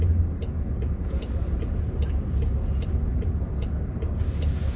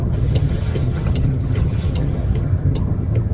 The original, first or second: first